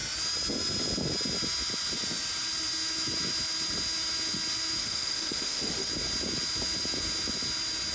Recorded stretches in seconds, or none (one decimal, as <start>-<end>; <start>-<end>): 0.0-4.8; 5.9-7.9